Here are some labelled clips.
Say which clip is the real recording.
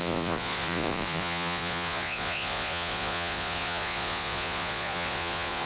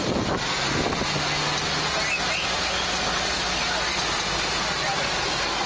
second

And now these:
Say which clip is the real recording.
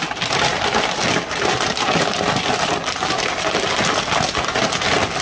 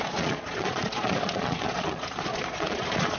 first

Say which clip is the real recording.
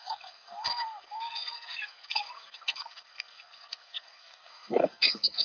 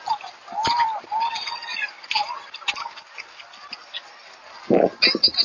second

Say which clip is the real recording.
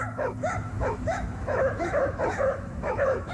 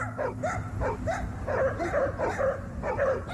second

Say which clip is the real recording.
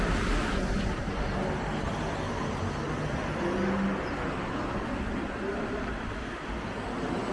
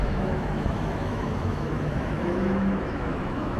first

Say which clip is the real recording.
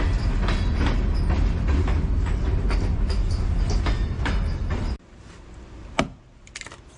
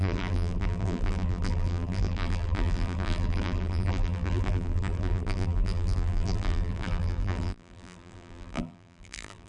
first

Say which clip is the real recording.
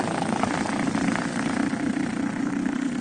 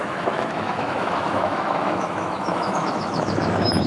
first